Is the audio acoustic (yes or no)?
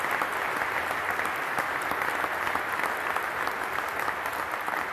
yes